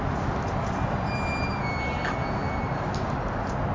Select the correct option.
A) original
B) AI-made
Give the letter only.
A